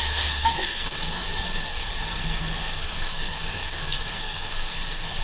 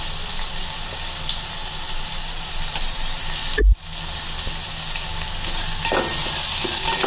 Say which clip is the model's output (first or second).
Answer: first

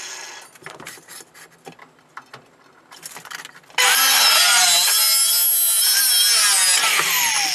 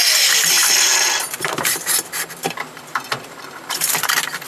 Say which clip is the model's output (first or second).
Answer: second